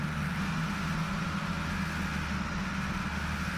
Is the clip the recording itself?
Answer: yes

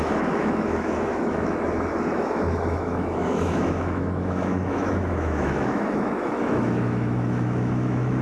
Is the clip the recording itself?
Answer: no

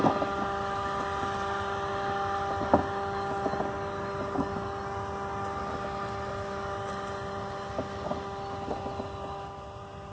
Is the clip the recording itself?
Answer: yes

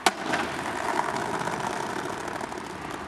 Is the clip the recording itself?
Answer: yes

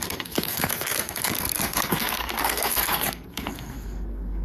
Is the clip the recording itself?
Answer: no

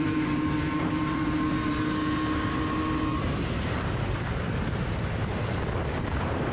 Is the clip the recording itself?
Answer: no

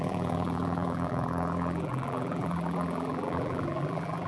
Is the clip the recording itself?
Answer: no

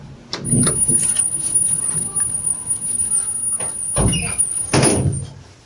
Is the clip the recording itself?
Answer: yes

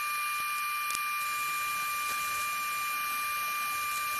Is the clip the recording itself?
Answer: yes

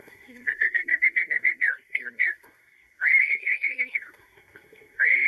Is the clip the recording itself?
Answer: no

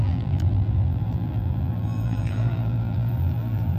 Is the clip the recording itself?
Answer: no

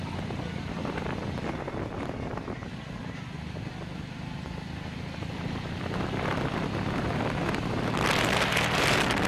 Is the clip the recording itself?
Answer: yes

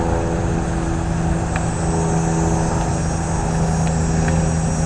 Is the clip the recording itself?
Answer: yes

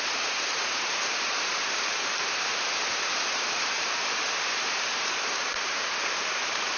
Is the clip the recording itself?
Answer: no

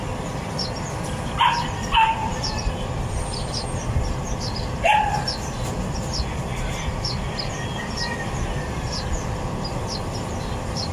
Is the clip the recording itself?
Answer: no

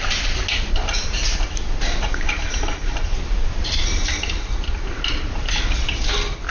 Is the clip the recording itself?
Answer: yes